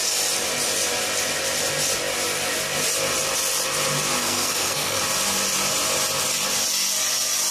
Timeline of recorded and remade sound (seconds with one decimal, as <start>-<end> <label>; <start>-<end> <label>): 0.0-4.2 recorded; 4.2-5.0 remade; 5.0-7.5 recorded